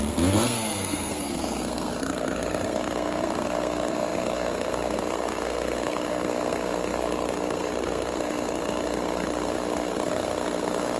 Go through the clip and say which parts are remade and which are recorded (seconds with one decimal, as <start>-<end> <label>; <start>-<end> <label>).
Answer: 0.0-11.0 remade